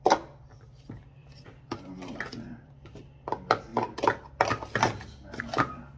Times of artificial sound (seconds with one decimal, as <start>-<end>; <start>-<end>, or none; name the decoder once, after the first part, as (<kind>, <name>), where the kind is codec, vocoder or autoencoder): 1.2-2.7 (vocoder, BigVGAN v2)

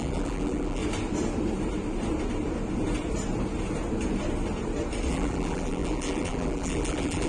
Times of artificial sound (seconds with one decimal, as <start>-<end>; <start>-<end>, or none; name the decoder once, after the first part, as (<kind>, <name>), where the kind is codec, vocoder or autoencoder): 0.0-0.8 (vocoder, BigVGAN v2); 5.1-7.3

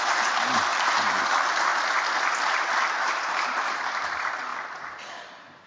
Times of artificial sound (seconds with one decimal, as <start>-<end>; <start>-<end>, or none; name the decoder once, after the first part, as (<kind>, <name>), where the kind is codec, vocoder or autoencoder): 0.0-1.7 (vocoder, BigVGAN v2); 2.9-4.5; 5.3-5.7

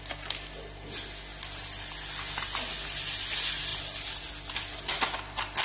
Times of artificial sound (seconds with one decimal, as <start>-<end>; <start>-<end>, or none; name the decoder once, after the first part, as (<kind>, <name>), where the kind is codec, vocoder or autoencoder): none

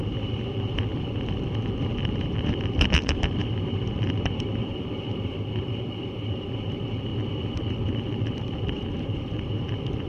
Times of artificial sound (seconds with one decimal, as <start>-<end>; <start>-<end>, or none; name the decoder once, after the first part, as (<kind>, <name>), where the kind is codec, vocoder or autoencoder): 0.0-0.9 (vocoder, BigVGAN v2); 2.0-7.1; 7.9-10.1

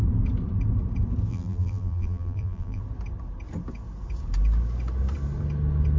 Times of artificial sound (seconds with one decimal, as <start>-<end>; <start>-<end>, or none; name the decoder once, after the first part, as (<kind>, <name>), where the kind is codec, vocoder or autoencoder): 1.3-2.8 (vocoder, BigVGAN v2)

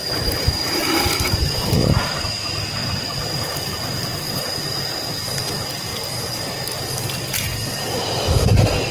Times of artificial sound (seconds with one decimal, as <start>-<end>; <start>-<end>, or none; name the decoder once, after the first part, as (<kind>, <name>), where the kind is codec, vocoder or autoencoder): 0.0-2.2 (vocoder, BigVGAN v2); 2.8-4.5; 5.9-6.9

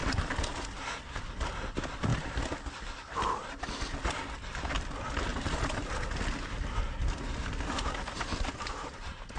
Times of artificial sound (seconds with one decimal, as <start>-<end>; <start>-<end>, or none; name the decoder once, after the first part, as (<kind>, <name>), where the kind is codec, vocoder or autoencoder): 0.0-1.0 (vocoder, BigVGAN v2); 5.3-6.0; 8.3-9.4